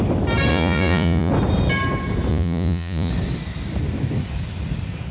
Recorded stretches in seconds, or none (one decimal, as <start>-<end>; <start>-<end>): 0.0-0.5; 1.3-2.3; 3.1-5.1